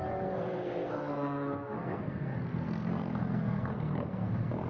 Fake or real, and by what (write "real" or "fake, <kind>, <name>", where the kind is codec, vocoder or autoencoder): fake, codec, SNAC